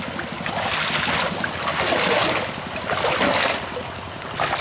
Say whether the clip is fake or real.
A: real